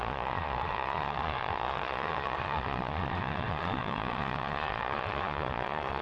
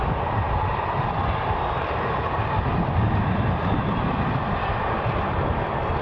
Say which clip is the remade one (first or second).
first